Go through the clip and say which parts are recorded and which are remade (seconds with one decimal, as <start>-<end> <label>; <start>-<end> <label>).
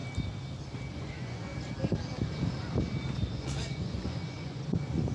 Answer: 0.0-0.9 recorded; 0.9-1.5 remade; 1.5-3.3 recorded; 3.3-5.1 remade